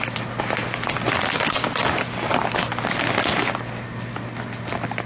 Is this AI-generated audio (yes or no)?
no